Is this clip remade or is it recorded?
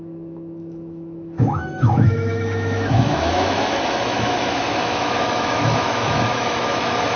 remade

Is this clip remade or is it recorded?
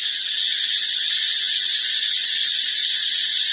remade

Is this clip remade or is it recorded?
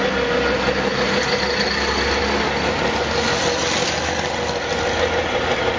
recorded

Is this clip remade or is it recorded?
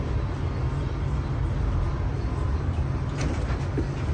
recorded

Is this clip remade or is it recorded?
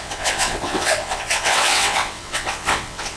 remade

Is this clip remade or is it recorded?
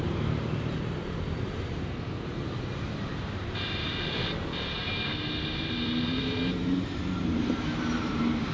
remade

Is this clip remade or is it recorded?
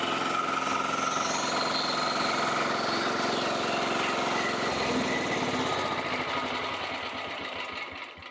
recorded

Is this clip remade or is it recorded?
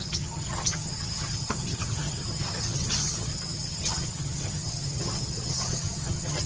remade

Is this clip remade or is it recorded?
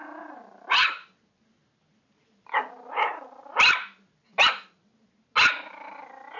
recorded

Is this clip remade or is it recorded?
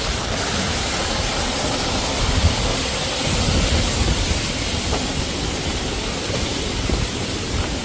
recorded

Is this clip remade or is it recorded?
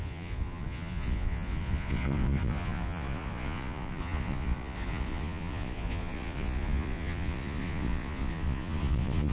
remade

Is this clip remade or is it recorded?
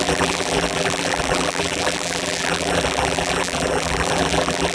remade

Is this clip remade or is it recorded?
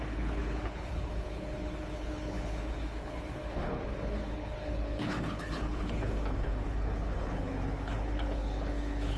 remade